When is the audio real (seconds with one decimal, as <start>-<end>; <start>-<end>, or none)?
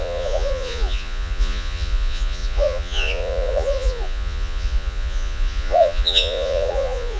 none